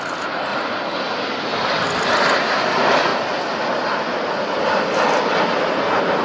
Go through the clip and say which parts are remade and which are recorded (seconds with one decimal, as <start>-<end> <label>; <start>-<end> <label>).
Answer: 0.0-6.2 recorded